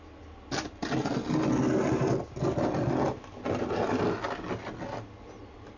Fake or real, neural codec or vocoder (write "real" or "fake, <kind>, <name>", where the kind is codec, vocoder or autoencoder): real